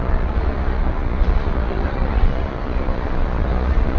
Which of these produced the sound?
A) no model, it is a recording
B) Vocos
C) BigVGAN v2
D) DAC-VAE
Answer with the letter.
B